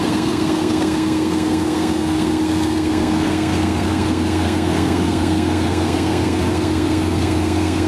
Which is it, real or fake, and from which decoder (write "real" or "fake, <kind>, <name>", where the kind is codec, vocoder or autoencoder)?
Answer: fake, codec, SNAC